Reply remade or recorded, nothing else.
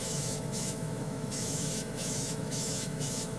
remade